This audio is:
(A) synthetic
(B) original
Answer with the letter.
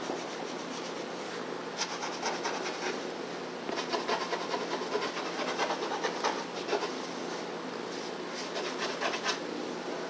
B